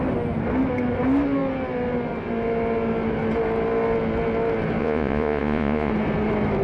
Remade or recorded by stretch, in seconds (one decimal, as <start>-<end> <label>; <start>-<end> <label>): 0.0-4.8 recorded; 4.8-5.9 remade; 5.9-6.6 recorded